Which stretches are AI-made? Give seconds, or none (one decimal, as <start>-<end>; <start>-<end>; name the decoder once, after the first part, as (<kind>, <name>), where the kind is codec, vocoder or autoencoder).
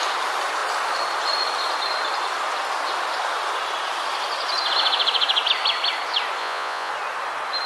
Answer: 6.4-6.9 (vocoder, Vocos)